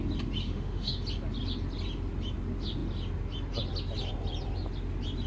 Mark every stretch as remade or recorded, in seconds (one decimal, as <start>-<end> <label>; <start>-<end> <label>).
0.0-0.4 recorded; 0.4-1.0 remade; 1.0-5.3 recorded